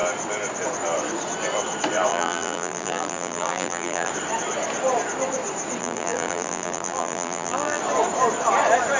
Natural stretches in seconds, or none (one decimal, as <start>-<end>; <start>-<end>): 0.0-2.1; 4.1-5.8; 7.8-9.0